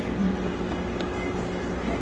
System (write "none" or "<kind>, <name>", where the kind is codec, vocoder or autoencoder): none